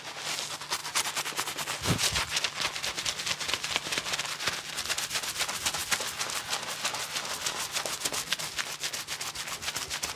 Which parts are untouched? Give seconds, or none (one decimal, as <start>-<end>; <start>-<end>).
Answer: 0.0-10.2